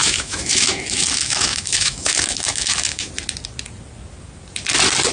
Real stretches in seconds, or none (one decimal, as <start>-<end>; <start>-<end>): 3.1-5.1